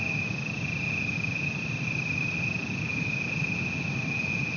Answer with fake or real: real